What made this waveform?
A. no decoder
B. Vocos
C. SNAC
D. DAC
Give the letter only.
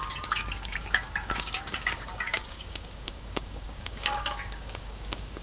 D